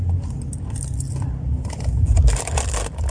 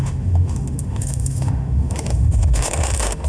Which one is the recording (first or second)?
first